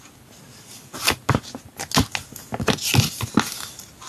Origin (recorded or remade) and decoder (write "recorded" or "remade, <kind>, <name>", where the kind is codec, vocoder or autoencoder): recorded